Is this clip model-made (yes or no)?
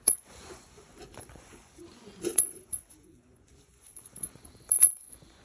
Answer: yes